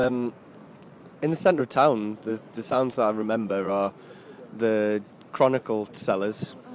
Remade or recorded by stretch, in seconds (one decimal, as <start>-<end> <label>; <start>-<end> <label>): 0.0-1.6 remade; 1.6-2.3 recorded; 2.3-4.1 remade; 4.1-6.7 recorded